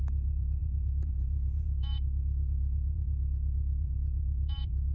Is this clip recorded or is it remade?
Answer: remade